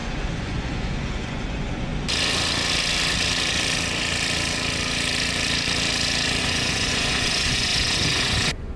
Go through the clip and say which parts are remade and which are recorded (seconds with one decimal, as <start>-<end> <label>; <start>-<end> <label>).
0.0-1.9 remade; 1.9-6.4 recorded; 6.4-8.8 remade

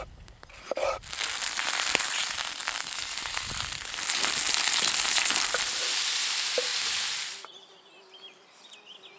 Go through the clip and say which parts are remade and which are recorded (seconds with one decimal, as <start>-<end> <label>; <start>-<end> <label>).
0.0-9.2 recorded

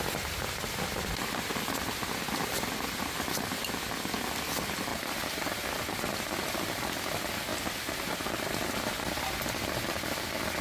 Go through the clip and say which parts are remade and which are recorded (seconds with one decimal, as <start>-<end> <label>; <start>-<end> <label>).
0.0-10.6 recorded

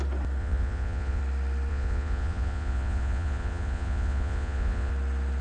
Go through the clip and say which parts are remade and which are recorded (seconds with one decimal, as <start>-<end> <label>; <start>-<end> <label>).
0.0-0.4 recorded; 0.4-1.2 remade; 1.2-1.7 recorded; 1.7-4.9 remade; 4.9-5.4 recorded